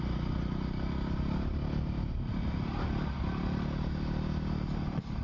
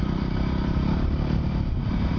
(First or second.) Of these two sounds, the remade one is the second